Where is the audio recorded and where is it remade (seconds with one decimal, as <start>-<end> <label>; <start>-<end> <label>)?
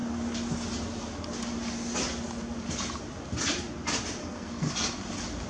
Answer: 0.0-4.2 recorded; 4.2-4.7 remade; 4.7-5.5 recorded